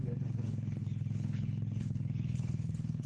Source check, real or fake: fake